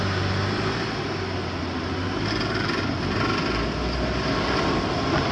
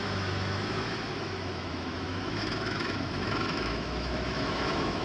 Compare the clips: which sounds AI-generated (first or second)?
second